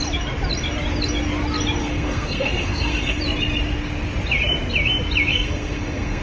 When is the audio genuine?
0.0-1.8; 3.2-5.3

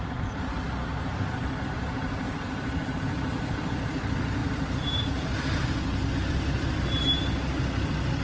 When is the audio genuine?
0.0-8.2